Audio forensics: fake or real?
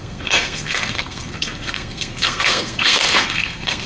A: fake